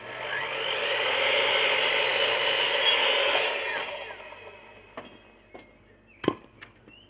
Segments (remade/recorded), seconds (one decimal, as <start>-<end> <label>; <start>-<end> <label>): 0.0-7.1 recorded